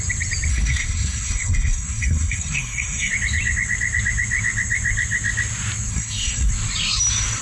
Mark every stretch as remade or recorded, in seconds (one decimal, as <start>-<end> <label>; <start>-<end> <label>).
0.0-0.5 recorded; 0.5-3.1 remade; 3.1-5.9 recorded; 5.9-6.5 remade; 6.5-7.4 recorded